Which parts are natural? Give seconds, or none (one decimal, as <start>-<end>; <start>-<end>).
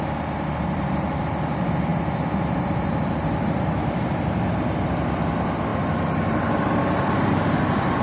none